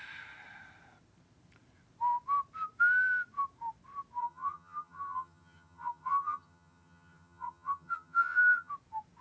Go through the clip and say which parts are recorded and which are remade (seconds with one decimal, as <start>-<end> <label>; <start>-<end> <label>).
0.0-4.2 recorded; 4.2-8.7 remade; 8.7-9.2 recorded